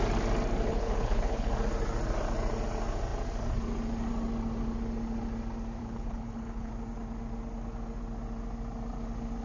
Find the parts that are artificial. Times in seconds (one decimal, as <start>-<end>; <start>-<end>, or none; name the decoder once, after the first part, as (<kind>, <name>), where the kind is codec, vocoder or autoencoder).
0.7-1.5 (codec, HILCodec); 5.8-6.7